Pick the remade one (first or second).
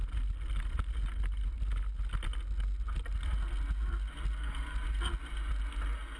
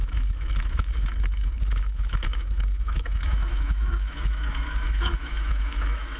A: second